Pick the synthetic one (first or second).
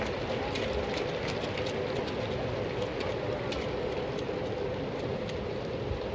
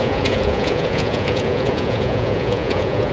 second